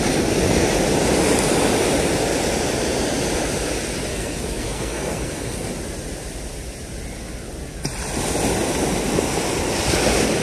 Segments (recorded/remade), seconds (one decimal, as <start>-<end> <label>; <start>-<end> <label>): 0.0-4.1 recorded; 4.1-5.7 remade; 5.7-10.4 recorded